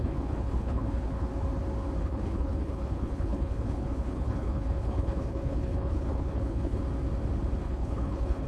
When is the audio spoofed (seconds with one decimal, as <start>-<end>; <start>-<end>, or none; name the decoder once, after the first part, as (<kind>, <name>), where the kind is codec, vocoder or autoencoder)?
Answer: 0.0-1.3 (codec, HILCodec); 2.0-6.8; 7.6-8.5